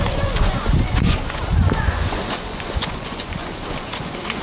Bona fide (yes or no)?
no